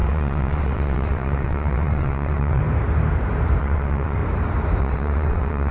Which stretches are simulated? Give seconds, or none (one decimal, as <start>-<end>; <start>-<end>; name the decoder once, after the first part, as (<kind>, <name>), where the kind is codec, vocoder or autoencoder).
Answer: 0.0-2.6 (vocoder, WaveNeXt); 3.6-4.2; 4.8-5.7